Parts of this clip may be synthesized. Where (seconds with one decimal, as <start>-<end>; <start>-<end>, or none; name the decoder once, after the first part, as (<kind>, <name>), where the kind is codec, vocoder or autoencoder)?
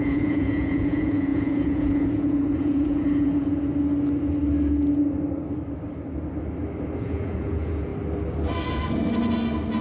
0.0-3.7 (vocoder, Vocos); 7.0-7.9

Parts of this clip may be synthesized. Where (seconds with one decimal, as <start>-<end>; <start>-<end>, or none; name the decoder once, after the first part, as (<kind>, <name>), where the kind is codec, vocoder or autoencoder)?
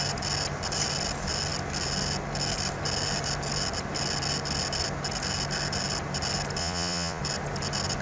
6.6-7.2 (vocoder, Vocos)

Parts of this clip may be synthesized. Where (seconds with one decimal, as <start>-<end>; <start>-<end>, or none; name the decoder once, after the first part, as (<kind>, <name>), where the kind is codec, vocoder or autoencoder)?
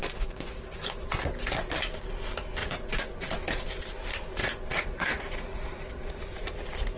0.0-1.1 (vocoder, Vocos); 2.6-3.3; 4.4-6.2